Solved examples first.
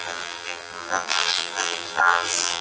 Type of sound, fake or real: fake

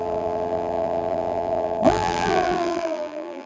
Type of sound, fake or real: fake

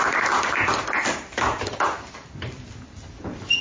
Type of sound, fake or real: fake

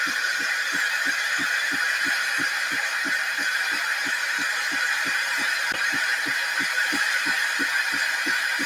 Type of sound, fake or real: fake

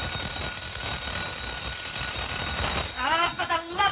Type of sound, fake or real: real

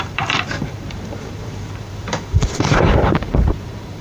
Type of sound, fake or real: fake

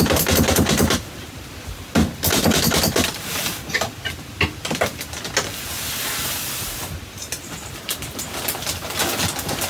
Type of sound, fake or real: real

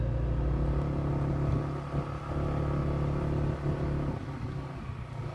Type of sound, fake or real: real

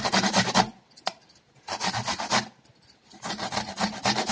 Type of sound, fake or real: real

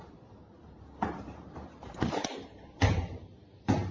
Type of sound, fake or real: fake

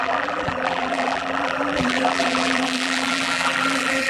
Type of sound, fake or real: fake